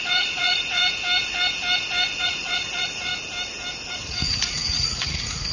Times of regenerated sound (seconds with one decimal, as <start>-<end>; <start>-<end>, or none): 0.0-0.8; 2.2-3.1; 3.9-5.5